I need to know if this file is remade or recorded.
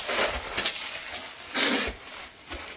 recorded